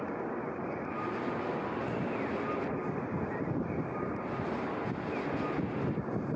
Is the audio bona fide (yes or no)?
yes